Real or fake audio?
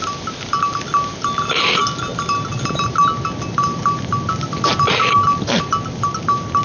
real